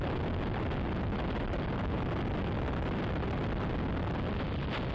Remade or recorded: recorded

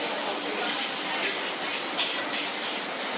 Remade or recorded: recorded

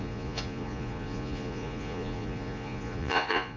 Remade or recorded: remade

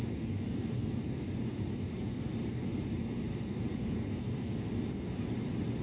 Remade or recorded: recorded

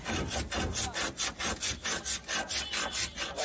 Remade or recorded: recorded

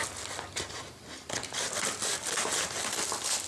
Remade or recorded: recorded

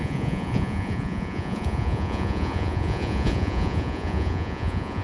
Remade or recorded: remade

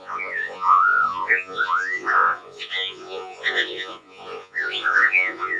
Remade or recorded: remade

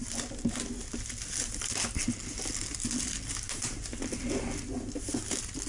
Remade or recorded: recorded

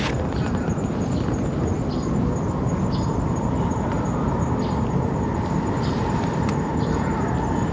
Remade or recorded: recorded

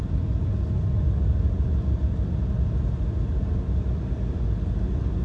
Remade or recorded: recorded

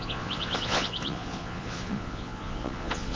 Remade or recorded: remade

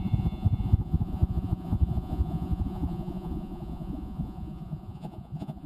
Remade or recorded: remade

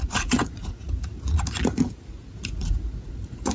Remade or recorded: remade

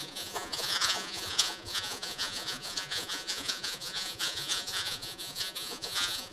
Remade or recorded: remade